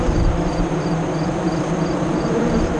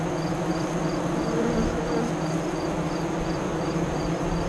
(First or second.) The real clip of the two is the second